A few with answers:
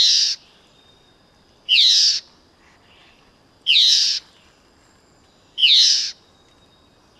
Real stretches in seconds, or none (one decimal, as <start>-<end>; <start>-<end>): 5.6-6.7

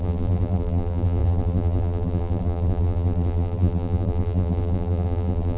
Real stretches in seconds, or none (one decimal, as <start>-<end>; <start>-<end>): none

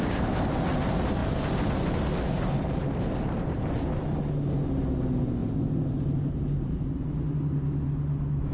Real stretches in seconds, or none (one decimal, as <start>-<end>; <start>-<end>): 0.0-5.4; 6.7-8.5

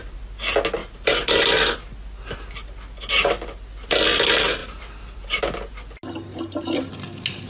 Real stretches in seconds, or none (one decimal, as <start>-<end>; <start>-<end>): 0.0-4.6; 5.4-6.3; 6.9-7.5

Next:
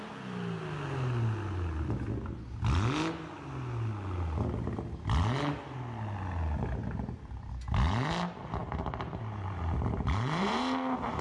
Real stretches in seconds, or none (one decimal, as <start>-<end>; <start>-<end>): 0.0-6.8; 7.5-8.6

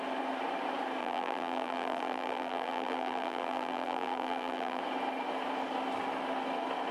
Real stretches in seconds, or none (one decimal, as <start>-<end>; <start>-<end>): 0.0-1.0; 4.8-6.9

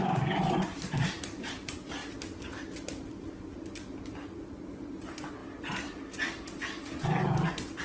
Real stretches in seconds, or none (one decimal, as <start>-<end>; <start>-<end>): 2.0-3.0; 5.4-7.8